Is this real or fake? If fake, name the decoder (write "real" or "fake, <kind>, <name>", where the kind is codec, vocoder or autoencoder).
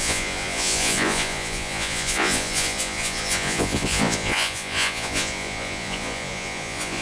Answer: fake, vocoder, Vocos